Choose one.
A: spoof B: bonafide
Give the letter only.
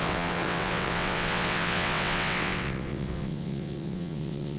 A